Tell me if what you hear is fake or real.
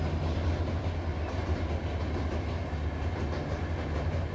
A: real